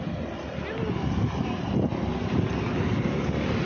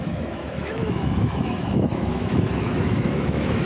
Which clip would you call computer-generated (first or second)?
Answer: second